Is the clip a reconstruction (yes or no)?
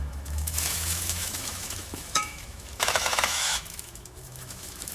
yes